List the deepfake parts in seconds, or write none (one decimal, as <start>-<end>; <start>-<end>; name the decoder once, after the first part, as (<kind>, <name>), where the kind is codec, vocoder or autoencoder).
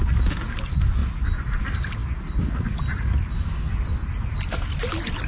none